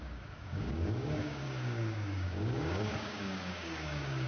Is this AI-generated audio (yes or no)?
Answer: yes